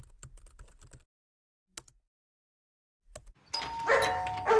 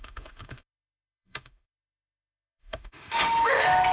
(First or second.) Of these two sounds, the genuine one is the first